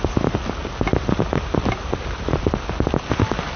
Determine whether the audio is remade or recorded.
recorded